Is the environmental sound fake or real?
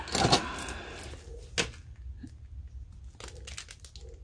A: real